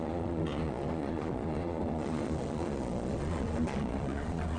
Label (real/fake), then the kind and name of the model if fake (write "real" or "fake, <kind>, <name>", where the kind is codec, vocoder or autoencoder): fake, vocoder, Vocos